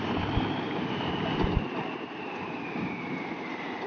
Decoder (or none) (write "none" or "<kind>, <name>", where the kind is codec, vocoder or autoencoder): vocoder, BigVGAN v2